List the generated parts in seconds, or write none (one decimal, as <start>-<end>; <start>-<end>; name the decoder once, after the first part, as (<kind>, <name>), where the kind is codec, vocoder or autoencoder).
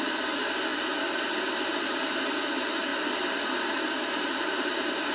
none